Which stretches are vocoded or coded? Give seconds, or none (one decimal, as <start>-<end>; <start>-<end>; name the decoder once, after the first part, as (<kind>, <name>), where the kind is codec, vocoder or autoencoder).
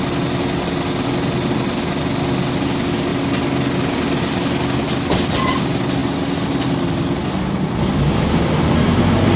none